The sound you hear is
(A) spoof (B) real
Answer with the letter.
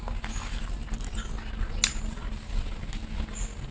B